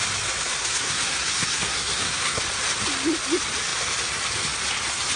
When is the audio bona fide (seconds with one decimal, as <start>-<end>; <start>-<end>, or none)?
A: 0.0-0.6; 2.4-5.2